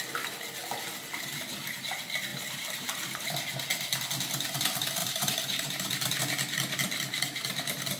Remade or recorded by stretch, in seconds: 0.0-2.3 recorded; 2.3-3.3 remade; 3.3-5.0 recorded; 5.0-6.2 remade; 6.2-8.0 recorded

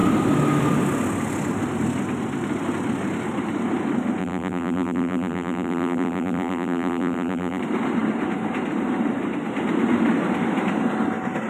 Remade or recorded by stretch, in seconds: 0.0-4.2 recorded; 4.2-7.6 remade; 7.6-11.5 recorded

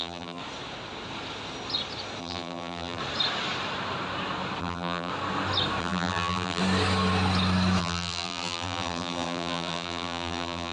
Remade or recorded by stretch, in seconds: 0.0-0.4 remade; 0.4-2.2 recorded; 2.2-3.0 remade; 3.0-4.6 recorded; 4.6-5.1 remade; 5.1-5.8 recorded; 5.8-6.6 remade; 6.6-7.8 recorded; 7.8-10.7 remade

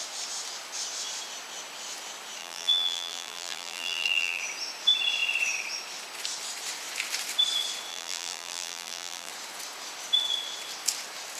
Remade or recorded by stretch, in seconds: 0.0-2.4 recorded; 2.4-4.4 remade; 4.4-7.9 recorded; 7.9-9.3 remade; 9.3-11.4 recorded

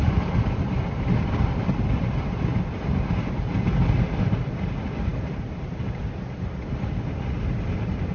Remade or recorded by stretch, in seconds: 0.0-8.1 recorded

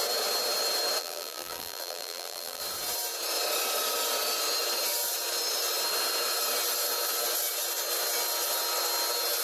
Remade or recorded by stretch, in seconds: 0.0-1.0 recorded; 1.0-2.6 remade; 2.6-9.4 recorded